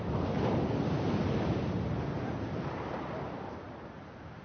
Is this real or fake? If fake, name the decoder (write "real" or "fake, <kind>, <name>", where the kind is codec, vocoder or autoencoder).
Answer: real